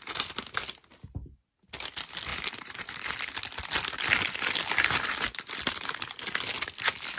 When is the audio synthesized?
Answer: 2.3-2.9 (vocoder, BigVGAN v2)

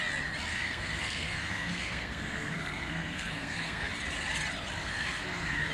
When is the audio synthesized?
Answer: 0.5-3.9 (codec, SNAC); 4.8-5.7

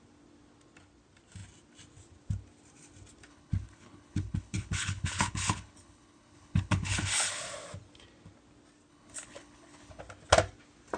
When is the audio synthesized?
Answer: 3.3-7.4 (codec, HILCodec); 8.9-10.0

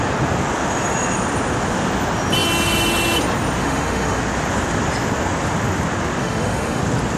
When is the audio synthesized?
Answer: 3.6-4.2 (autoencoder, DAC-VAE); 6.2-6.8

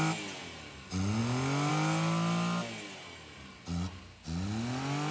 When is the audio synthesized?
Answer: none

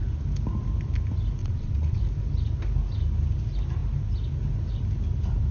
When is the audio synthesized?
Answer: 1.4-2.0 (vocoder, WaveNeXt)

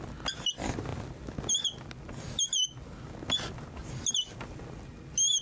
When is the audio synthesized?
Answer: none

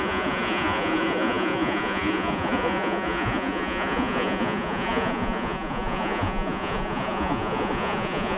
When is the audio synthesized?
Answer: 0.0-8.4 (vocoder, Vocos)